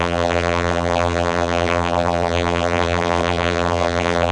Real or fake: fake